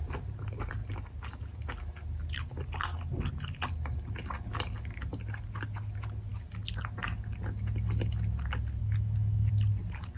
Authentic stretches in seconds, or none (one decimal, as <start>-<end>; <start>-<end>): 0.0-8.8; 9.5-10.2